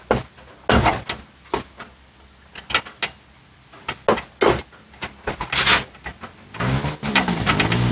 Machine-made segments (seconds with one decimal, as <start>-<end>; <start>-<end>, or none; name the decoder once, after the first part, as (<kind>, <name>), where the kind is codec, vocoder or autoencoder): none